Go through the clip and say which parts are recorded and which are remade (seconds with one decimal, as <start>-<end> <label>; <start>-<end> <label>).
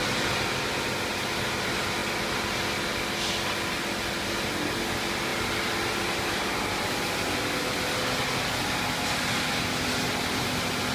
0.0-10.9 recorded